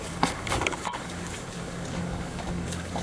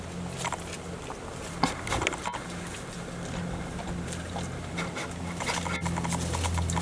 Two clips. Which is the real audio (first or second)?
second